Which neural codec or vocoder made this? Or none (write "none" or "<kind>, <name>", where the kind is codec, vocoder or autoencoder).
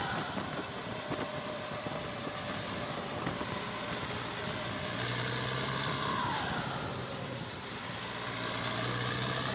none